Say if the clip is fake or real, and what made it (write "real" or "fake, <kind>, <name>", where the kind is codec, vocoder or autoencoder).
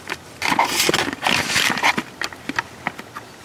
real